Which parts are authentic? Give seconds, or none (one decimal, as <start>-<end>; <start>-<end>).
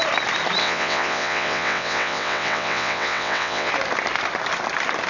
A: 0.0-0.6; 3.7-5.1